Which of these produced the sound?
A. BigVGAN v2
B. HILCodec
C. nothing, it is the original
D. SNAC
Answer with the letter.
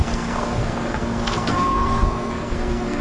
D